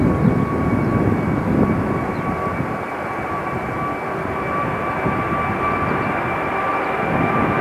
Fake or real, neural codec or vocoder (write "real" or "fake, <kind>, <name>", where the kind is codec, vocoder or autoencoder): real